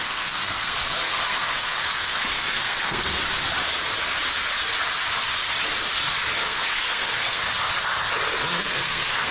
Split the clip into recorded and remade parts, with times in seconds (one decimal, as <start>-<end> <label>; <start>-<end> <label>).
0.0-3.2 remade; 3.2-6.3 recorded; 6.3-7.4 remade; 7.4-8.6 recorded; 8.6-9.3 remade